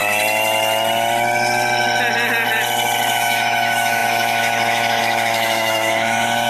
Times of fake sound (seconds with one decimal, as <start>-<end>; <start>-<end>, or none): 3.1-6.5